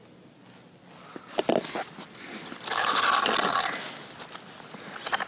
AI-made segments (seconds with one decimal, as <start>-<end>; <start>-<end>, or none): none